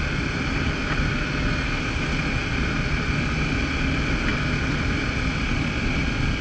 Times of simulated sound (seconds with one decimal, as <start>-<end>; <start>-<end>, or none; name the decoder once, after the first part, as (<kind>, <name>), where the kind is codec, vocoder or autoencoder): 2.4-3.3 (vocoder, BigVGAN v2)

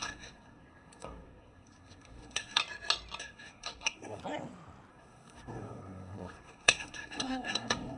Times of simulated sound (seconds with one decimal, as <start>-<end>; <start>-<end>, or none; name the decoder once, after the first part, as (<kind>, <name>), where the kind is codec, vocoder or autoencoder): 0.0-2.6 (codec, SNAC); 3.2-4.2; 4.9-8.0

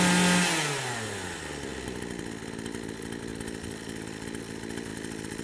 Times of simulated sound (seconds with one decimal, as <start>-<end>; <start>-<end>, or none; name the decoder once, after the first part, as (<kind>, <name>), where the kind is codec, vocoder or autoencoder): 1.7-2.2 (vocoder, BigVGAN v2); 3.3-4.4; 4.9-5.4